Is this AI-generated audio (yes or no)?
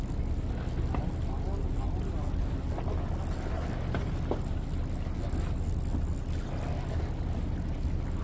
no